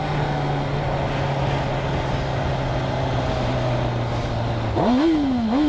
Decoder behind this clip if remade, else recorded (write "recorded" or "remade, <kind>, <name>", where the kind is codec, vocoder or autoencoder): recorded